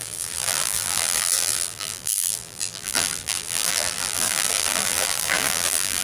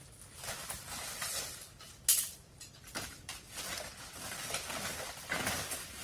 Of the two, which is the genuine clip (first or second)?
second